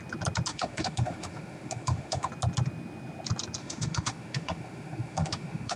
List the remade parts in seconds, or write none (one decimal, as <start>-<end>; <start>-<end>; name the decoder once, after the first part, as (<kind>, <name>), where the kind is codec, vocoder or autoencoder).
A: 0.5-2.3 (autoencoder, DAC-VAE); 3.6-5.8